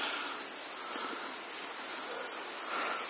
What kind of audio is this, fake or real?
real